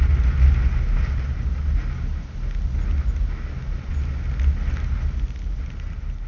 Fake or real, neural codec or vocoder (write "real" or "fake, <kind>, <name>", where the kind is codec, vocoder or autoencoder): real